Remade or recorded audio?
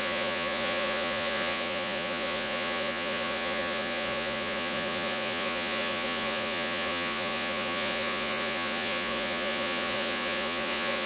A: remade